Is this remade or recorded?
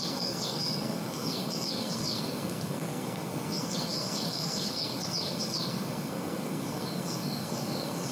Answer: remade